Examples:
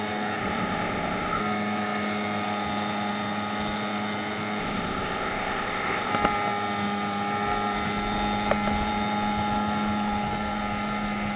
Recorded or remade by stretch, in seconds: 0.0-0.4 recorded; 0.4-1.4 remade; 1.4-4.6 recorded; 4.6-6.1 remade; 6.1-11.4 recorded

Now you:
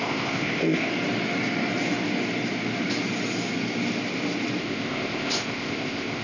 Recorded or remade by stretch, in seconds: 0.0-0.9 remade; 0.9-4.6 recorded; 4.6-6.2 remade

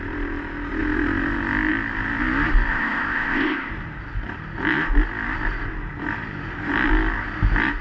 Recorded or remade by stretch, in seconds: 0.0-2.7 recorded; 2.7-3.7 remade; 3.7-7.8 recorded

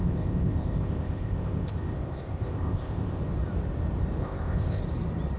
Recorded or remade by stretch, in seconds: 0.0-3.2 remade; 3.2-4.2 recorded; 4.2-4.8 remade; 4.8-5.4 recorded

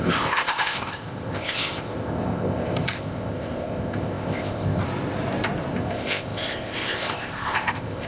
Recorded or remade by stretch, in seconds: 0.0-4.8 remade; 4.8-5.7 recorded; 5.7-8.1 remade